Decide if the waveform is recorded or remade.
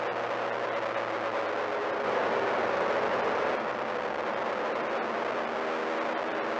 recorded